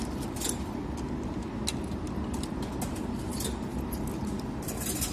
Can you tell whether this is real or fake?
real